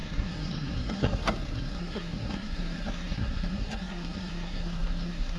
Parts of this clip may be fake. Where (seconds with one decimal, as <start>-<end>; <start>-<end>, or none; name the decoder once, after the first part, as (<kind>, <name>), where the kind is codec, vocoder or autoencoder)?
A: 0.0-5.4 (codec, SNAC)